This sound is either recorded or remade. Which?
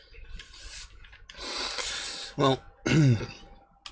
recorded